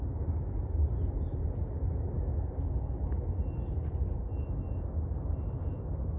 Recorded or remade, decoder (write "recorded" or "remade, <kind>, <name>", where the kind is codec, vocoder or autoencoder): recorded